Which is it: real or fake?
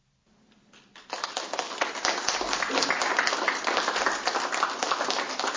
real